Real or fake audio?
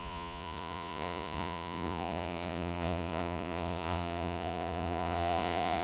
fake